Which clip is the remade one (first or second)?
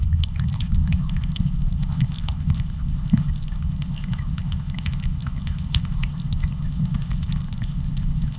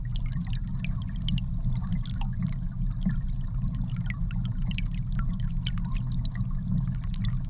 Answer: first